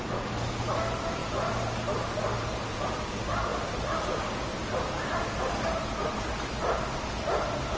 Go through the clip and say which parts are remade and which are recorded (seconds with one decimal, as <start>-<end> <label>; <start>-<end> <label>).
0.0-7.8 recorded